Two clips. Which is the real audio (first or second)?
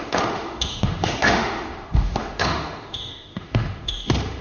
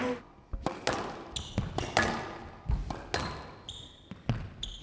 second